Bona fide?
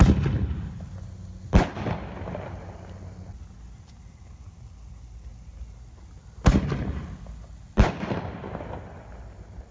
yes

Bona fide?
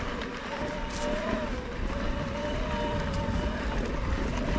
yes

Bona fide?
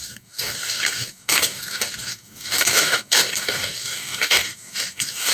no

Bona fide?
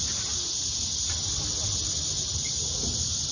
yes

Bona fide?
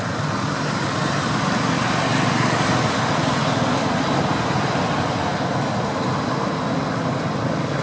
yes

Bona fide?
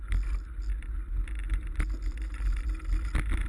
yes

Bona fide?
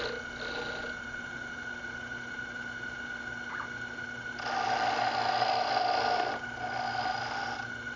yes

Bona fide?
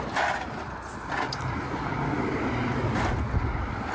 yes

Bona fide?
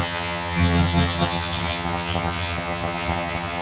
no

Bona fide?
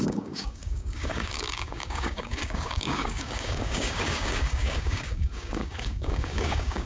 no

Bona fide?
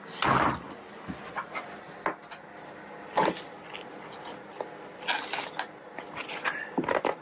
yes